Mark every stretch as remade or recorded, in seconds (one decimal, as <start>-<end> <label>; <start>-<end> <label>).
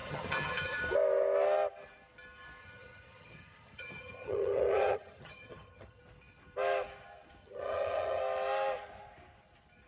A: 0.0-0.8 remade; 0.8-2.6 recorded; 2.6-6.0 remade; 6.0-7.4 recorded; 7.4-8.2 remade; 8.2-9.9 recorded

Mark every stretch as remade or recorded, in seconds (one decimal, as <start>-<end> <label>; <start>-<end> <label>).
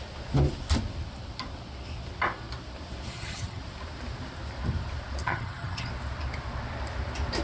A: 0.0-3.1 recorded; 3.1-3.6 remade; 3.6-5.2 recorded; 5.2-5.9 remade; 5.9-7.4 recorded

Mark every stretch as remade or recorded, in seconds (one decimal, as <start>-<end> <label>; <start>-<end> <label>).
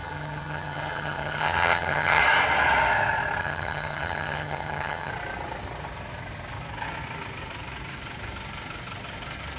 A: 0.0-2.2 remade; 2.2-3.4 recorded; 3.4-5.1 remade; 5.1-9.6 recorded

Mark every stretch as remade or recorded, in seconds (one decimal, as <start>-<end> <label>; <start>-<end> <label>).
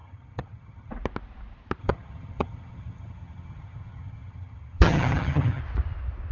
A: 0.0-0.9 remade; 0.9-1.8 recorded; 1.8-5.6 remade; 5.6-6.3 recorded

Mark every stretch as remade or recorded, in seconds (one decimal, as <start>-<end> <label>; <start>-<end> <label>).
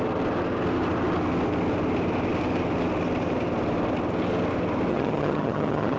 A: 0.0-4.9 recorded; 4.9-6.0 remade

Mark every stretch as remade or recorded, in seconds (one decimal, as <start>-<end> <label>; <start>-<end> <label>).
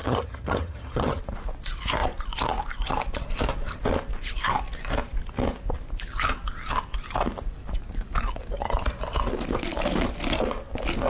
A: 0.0-1.2 remade; 1.2-11.1 recorded